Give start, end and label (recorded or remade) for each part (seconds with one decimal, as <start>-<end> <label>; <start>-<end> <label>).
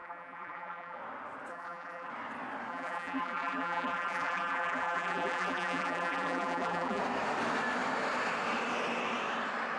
0.0-1.0 remade; 1.0-1.5 recorded; 1.5-2.1 remade; 2.1-2.7 recorded; 2.7-7.0 remade; 7.0-9.8 recorded